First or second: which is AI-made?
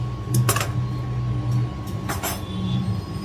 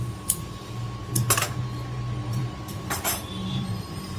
second